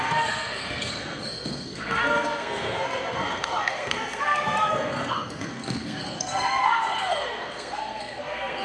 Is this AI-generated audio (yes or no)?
yes